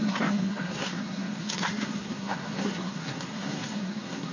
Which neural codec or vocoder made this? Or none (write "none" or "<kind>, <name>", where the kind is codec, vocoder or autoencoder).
codec, SNAC